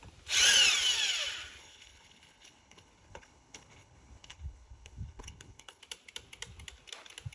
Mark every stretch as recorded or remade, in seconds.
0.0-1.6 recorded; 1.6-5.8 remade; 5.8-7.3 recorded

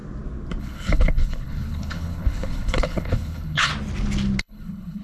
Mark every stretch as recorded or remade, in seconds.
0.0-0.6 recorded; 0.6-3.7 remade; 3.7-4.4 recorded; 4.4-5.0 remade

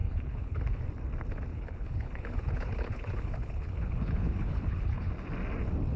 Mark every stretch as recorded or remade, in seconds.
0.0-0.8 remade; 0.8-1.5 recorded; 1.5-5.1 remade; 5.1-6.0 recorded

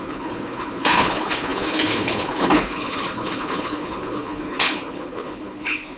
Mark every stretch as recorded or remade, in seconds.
0.0-6.0 remade